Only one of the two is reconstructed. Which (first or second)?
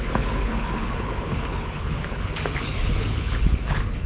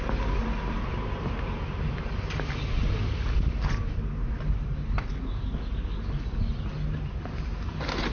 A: first